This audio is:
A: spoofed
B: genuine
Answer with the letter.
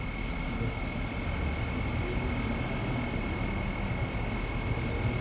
B